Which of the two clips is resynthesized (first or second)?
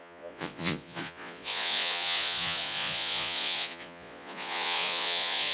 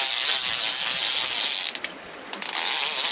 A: first